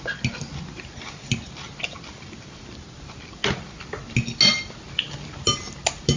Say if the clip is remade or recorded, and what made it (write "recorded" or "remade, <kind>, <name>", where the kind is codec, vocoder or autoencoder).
recorded